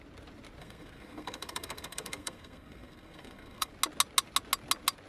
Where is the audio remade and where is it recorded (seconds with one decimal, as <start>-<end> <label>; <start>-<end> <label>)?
0.0-0.6 recorded; 0.6-3.7 remade; 3.7-5.1 recorded

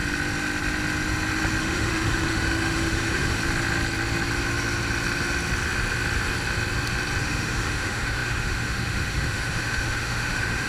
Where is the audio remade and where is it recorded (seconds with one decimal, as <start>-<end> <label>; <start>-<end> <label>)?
0.0-1.6 recorded; 1.6-3.4 remade; 3.4-7.2 recorded; 7.2-10.7 remade

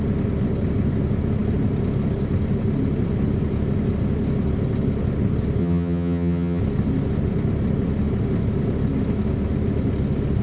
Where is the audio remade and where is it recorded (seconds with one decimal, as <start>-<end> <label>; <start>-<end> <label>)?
0.0-5.6 recorded; 5.6-6.6 remade; 6.6-10.4 recorded

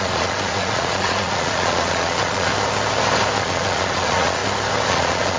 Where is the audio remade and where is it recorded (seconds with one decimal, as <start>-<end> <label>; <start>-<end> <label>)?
0.0-2.5 remade; 2.5-3.4 recorded; 3.4-4.4 remade; 4.4-4.9 recorded; 4.9-5.4 remade